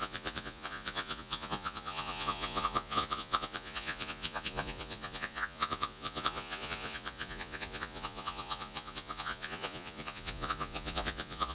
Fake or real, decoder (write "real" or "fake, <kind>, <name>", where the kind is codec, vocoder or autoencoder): fake, vocoder, Vocos